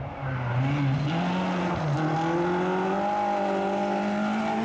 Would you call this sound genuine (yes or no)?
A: yes